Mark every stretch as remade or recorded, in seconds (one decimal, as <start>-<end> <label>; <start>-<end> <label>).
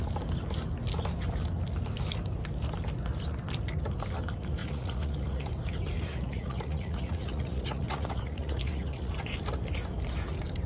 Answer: 0.0-4.6 recorded; 4.6-5.5 remade; 5.5-6.1 recorded; 6.1-9.1 remade; 9.1-10.7 recorded